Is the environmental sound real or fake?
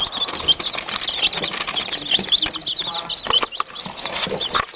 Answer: fake